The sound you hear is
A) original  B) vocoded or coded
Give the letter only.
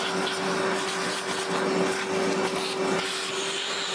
A